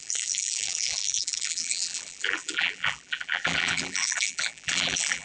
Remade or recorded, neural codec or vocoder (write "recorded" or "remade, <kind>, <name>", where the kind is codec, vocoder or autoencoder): remade, vocoder, BigVGAN v2